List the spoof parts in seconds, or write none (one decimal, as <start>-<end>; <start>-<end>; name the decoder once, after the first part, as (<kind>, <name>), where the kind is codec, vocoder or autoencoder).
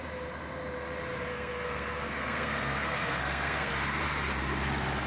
1.3-3.7 (codec, SNAC)